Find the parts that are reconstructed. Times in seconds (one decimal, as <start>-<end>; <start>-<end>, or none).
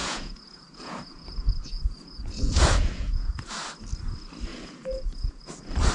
0.0-3.5; 4.5-5.5